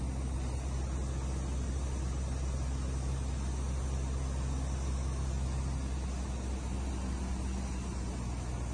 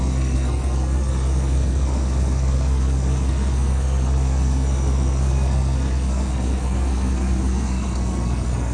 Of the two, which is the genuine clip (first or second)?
first